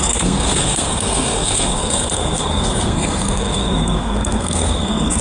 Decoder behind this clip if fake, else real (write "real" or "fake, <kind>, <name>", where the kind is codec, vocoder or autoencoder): fake, codec, SNAC